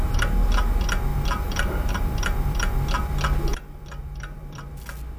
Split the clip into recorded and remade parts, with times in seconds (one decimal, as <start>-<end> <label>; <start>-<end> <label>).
0.0-1.1 recorded; 1.1-2.8 remade; 2.8-3.5 recorded; 3.5-4.7 remade; 4.7-5.2 recorded